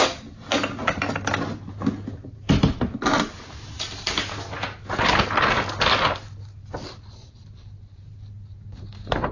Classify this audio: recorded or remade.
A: recorded